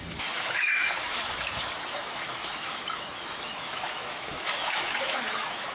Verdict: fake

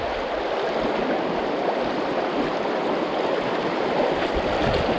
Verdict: real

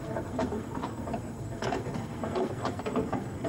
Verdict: fake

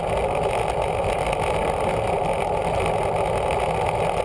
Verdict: real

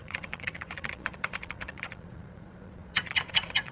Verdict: fake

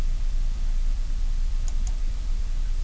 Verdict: fake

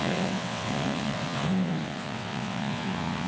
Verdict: fake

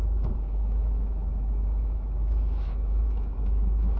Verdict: fake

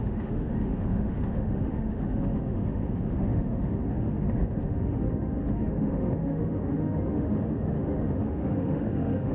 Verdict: fake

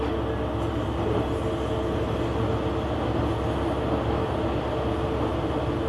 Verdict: real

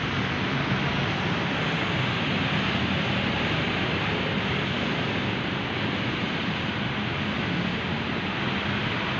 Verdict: real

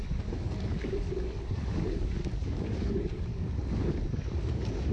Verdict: fake